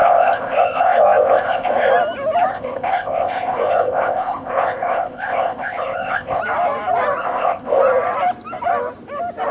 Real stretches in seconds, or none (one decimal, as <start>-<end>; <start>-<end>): 1.9-2.5; 6.4-7.2; 7.8-9.5